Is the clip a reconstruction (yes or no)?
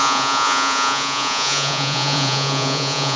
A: yes